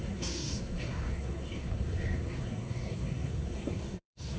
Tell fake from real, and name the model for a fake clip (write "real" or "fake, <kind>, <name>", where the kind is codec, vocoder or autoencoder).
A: fake, codec, SNAC